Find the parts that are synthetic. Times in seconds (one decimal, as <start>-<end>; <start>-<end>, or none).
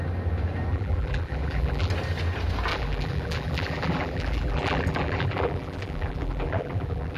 0.7-1.9; 2.7-7.2